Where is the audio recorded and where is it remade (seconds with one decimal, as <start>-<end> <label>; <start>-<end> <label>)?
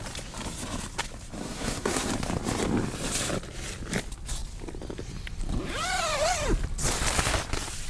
0.0-1.4 recorded; 1.4-2.1 remade; 2.1-7.9 recorded